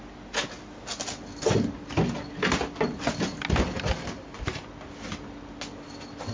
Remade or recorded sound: recorded